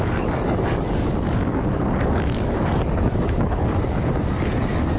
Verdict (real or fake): fake